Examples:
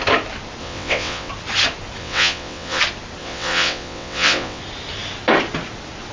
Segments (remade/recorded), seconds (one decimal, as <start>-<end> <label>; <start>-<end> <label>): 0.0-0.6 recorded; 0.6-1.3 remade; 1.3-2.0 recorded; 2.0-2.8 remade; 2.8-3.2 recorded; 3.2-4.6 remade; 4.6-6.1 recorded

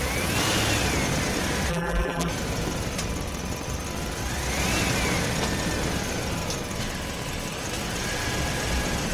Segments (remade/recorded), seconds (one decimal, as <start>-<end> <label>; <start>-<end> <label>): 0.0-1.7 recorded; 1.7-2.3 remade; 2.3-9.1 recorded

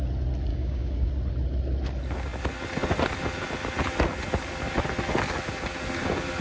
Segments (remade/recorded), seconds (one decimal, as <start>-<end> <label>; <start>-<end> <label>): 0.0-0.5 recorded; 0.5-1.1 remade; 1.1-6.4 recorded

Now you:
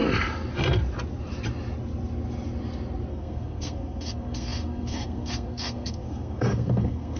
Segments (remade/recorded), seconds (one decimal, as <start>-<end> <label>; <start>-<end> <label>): 0.0-3.1 recorded; 3.1-7.2 remade

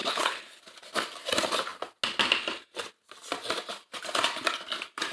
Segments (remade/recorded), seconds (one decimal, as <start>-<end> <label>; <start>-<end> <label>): 0.0-0.6 remade; 0.6-5.1 recorded

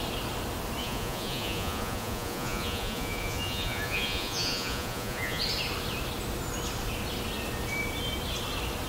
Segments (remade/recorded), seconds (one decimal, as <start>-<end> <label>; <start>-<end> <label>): 0.0-0.8 recorded; 0.8-5.4 remade; 5.4-8.9 recorded

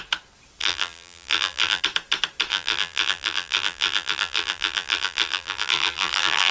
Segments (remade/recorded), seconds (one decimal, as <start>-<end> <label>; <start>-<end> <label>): 0.0-0.6 recorded; 0.6-1.8 remade; 1.8-2.5 recorded; 2.5-6.5 remade